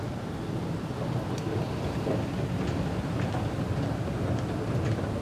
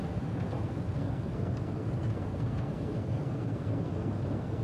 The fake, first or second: second